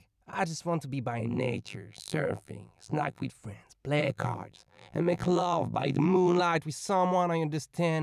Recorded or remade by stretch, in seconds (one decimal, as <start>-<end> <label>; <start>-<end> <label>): 0.0-1.2 recorded; 1.2-3.3 remade; 3.3-4.0 recorded; 4.0-6.4 remade; 6.4-8.0 recorded